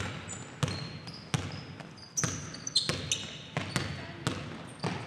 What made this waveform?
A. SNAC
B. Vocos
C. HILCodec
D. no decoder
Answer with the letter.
D